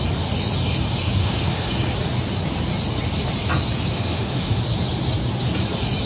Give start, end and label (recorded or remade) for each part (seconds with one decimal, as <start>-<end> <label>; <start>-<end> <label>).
0.0-1.2 recorded; 1.2-1.7 remade; 1.7-3.9 recorded; 3.9-4.6 remade; 4.6-6.1 recorded